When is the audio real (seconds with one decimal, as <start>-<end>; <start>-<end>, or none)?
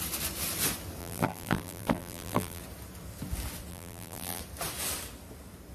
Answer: 0.0-1.0; 2.6-3.7; 4.4-5.7